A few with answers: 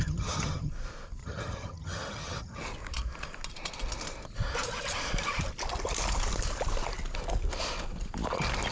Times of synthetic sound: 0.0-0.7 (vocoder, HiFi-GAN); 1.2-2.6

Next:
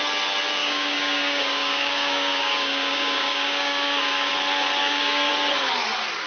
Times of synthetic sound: 0.6-4.3 (codec, DAC); 4.8-5.3

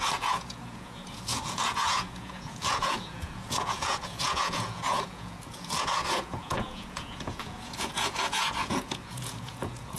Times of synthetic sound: 0.0-10.0 (vocoder, Vocos)